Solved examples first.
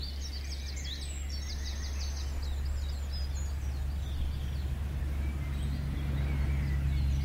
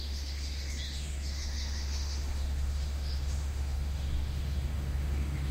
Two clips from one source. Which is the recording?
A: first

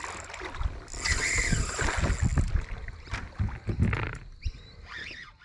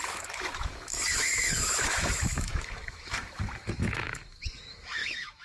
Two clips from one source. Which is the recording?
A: first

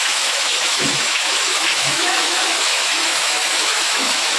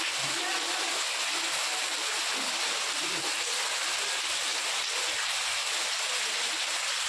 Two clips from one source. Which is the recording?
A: second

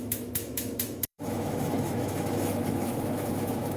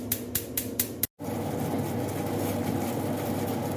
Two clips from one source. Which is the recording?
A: second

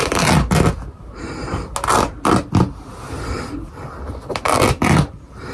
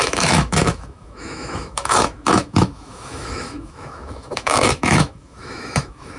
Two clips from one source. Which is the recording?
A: first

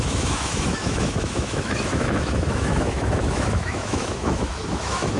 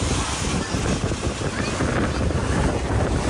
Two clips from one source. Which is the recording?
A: second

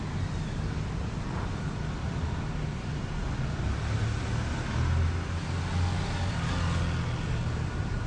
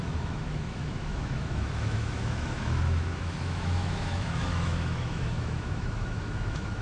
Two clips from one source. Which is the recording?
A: first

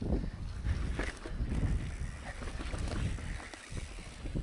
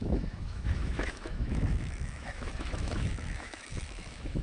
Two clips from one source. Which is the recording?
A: first